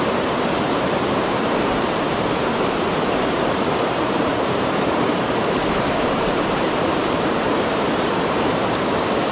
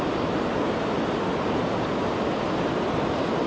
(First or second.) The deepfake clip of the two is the first